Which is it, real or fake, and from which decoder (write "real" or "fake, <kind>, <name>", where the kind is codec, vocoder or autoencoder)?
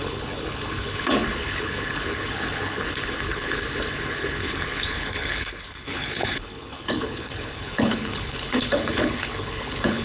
fake, codec, HILCodec